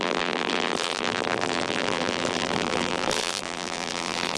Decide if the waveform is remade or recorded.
remade